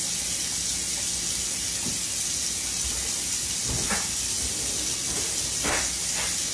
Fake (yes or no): no